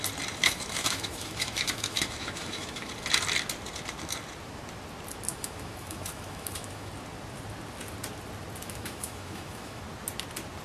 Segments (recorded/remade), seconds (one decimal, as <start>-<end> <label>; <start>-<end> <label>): 0.0-0.4 recorded; 0.4-2.9 remade; 2.9-5.3 recorded; 5.3-6.9 remade; 6.9-8.6 recorded; 8.6-9.8 remade; 9.8-10.6 recorded